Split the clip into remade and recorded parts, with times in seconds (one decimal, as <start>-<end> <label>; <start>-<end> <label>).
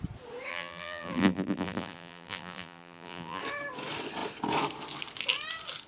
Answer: 0.0-0.5 recorded; 0.5-3.4 remade; 3.4-5.9 recorded